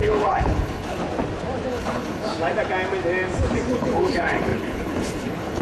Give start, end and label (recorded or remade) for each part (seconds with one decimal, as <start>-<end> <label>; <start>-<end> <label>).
0.0-1.0 remade; 1.0-1.7 recorded; 1.7-2.3 remade; 2.3-3.7 recorded; 3.7-5.6 remade